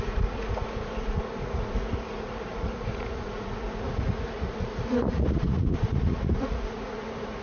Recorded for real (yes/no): no